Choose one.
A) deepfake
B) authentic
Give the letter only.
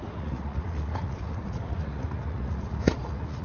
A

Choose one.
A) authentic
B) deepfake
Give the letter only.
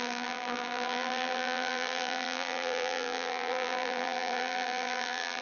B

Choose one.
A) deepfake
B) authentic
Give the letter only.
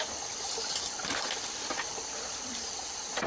A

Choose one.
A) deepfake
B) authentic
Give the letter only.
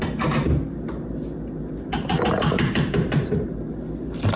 A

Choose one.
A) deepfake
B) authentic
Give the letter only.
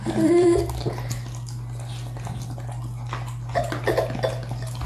B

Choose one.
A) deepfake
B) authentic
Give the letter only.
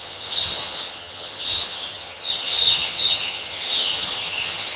A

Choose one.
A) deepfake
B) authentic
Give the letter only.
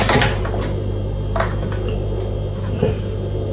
B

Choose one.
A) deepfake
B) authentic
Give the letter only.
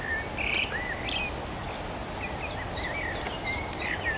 B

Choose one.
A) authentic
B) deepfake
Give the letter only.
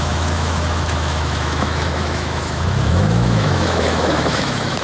B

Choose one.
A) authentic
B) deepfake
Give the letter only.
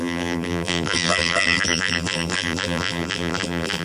B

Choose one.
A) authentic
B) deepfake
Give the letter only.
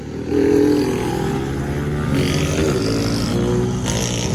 A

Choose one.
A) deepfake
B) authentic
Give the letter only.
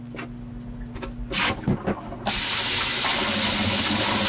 B